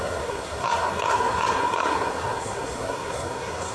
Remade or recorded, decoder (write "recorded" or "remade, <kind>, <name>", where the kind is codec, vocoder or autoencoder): remade, codec, SNAC